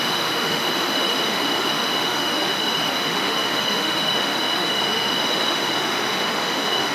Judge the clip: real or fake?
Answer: fake